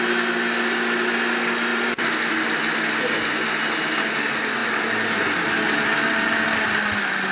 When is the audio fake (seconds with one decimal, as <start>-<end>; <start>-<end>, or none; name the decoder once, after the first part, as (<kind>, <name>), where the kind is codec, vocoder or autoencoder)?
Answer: 1.7-2.3 (vocoder, BigVGAN v2)